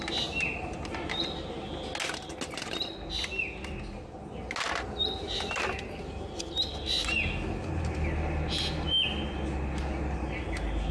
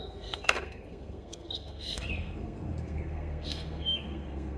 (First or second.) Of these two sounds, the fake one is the second